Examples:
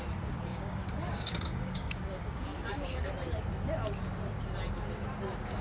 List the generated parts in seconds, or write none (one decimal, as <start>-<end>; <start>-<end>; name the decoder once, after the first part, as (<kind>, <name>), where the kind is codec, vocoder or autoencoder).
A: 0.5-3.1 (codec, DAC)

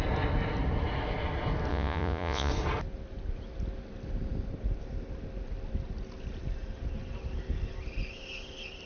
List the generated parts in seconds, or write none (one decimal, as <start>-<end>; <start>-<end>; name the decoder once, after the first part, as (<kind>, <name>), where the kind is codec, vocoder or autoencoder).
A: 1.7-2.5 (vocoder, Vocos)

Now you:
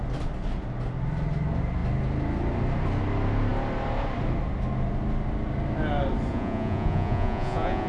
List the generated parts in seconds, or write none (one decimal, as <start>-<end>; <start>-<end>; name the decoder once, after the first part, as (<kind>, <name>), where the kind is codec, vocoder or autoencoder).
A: 6.3-7.9 (vocoder, Vocos)

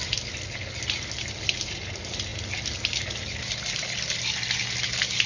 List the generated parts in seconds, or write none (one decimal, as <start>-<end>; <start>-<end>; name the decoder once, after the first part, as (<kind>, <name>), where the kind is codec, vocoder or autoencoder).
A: none